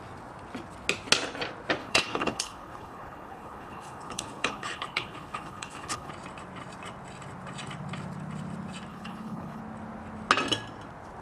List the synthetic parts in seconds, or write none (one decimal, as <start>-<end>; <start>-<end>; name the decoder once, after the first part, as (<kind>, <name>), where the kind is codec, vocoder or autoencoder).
1.8-6.1 (codec, HILCodec); 8.9-9.6